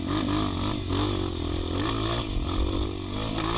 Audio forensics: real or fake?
real